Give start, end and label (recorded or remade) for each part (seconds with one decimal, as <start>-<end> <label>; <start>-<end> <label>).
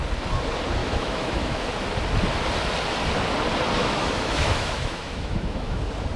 0.0-0.8 recorded; 0.8-1.6 remade; 1.6-3.8 recorded; 3.8-5.8 remade; 5.8-6.2 recorded